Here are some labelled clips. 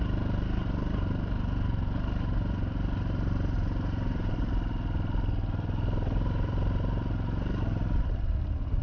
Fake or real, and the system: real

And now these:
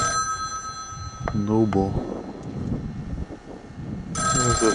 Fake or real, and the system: real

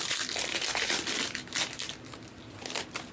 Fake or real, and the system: fake, vocoder, BigVGAN v2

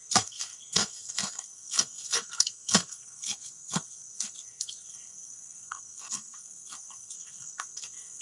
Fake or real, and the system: fake, codec, SNAC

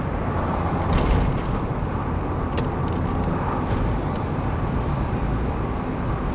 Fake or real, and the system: real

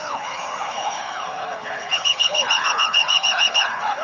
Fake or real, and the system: fake, codec, HILCodec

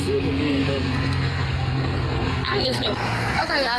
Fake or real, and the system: fake, codec, SNAC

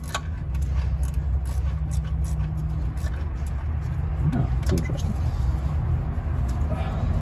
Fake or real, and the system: real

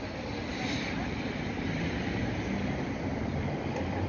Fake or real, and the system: real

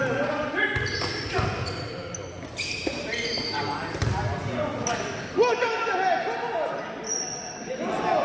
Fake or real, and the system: real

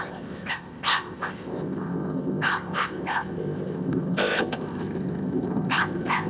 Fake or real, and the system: fake, codec, ZipCodec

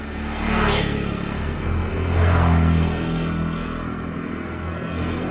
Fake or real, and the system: fake, codec, SNAC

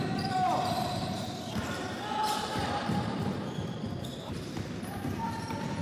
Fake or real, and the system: fake, vocoder, BigVGAN v2